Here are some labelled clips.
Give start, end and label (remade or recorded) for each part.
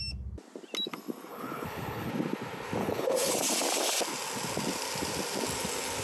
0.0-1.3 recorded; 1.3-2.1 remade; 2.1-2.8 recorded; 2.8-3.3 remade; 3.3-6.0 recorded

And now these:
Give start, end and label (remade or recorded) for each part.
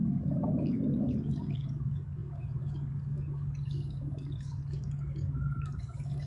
0.0-6.3 remade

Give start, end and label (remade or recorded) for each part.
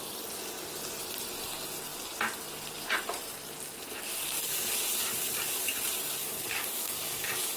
0.0-6.2 recorded; 6.2-7.6 remade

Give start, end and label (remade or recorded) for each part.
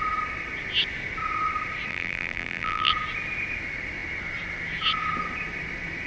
0.0-1.9 recorded; 1.9-2.9 remade; 2.9-6.1 recorded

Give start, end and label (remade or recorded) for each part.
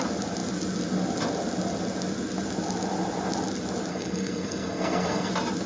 0.0-3.9 recorded; 3.9-5.3 remade; 5.3-5.7 recorded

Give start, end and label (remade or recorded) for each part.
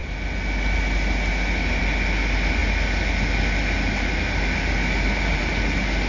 0.0-6.1 recorded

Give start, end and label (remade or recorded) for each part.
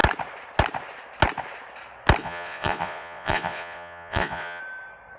0.0-2.2 recorded; 2.2-4.6 remade; 4.6-5.2 recorded